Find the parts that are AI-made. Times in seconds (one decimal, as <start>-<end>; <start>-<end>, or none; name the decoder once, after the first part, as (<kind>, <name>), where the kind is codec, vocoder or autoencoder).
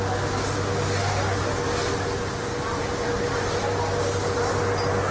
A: none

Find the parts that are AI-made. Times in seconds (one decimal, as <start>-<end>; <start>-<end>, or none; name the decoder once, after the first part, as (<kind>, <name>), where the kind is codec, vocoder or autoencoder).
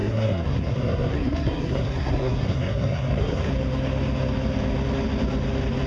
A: 0.0-3.5 (codec, SNAC)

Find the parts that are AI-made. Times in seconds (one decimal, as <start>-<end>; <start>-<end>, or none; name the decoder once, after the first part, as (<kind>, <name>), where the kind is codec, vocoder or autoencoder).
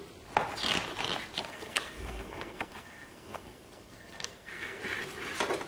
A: 1.4-4.8 (codec, SNAC)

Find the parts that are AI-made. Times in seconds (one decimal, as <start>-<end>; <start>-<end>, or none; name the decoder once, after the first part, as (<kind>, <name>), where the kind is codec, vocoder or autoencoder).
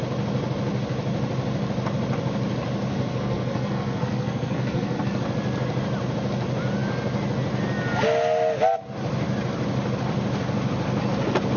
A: 2.9-5.2 (codec, SNAC)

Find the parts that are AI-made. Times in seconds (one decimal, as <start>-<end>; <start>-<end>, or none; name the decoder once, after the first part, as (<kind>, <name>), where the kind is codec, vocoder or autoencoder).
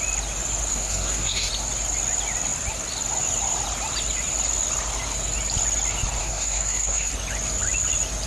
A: 0.7-1.5 (codec, SNAC); 6.2-7.1